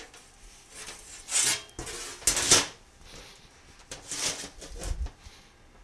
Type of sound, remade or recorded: recorded